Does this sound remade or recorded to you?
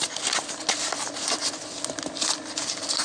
recorded